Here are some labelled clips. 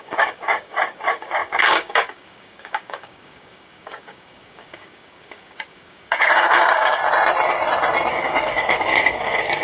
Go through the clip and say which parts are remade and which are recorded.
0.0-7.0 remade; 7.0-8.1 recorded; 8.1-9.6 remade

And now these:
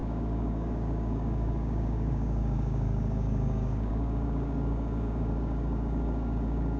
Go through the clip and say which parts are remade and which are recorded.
0.0-6.8 remade

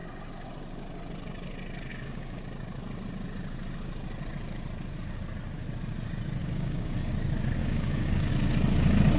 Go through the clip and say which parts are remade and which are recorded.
0.0-1.9 recorded; 1.9-2.4 remade; 2.4-6.4 recorded; 6.4-7.1 remade; 7.1-7.6 recorded; 7.6-8.3 remade; 8.3-9.2 recorded

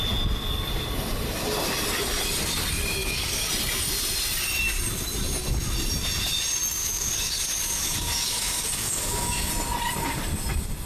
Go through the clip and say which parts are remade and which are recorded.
0.0-3.0 recorded; 3.0-3.5 remade; 3.5-6.8 recorded; 6.8-9.5 remade; 9.5-10.8 recorded

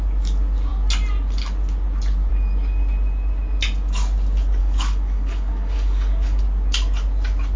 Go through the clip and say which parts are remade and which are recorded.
0.0-4.6 recorded; 4.6-6.4 remade; 6.4-7.6 recorded

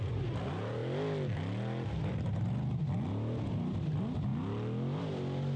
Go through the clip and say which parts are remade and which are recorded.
0.0-5.6 recorded